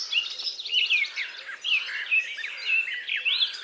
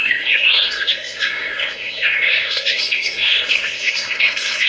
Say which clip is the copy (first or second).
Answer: second